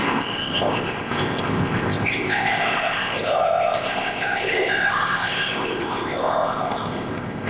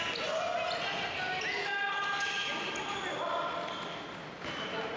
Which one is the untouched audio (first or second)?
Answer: second